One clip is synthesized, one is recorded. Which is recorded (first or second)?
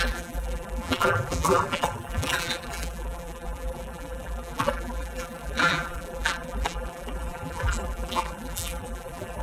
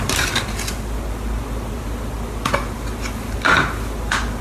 second